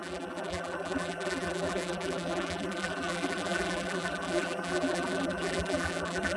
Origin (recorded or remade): remade